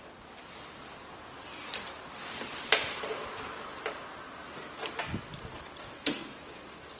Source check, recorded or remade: recorded